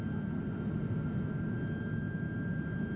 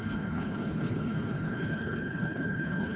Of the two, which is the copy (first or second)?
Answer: second